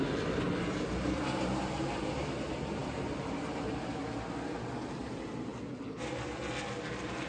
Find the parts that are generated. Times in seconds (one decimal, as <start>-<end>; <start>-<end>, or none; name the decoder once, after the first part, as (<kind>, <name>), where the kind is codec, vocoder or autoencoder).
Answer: 0.0-4.0 (vocoder, BigVGAN v2); 5.0-5.5